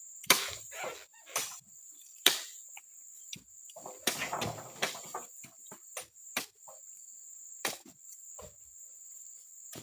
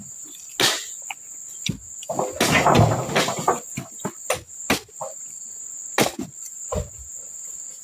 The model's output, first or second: first